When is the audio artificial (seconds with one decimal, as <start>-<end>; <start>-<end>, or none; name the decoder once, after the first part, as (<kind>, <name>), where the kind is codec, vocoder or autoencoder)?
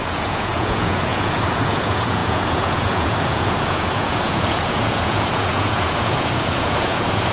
0.0-7.3 (vocoder, Vocos)